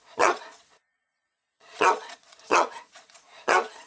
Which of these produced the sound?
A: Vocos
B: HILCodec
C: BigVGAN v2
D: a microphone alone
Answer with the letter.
A